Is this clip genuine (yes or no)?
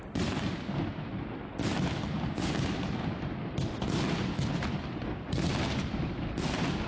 yes